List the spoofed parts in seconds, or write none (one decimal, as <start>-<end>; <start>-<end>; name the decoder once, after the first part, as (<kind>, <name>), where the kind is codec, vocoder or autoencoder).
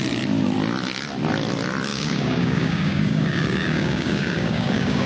1.9-5.1 (codec, DAC)